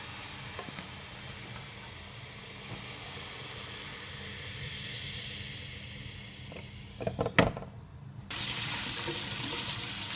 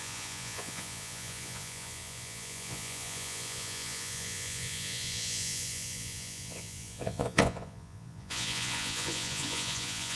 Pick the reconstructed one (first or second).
second